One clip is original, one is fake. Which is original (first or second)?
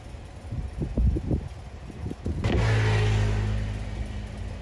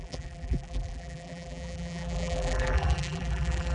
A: first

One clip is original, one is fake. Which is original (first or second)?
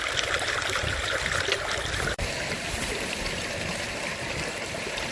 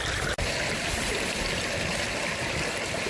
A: second